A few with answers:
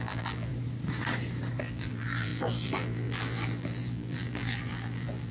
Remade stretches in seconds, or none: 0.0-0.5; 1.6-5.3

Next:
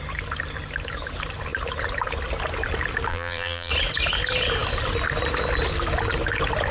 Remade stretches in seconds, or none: 3.1-3.7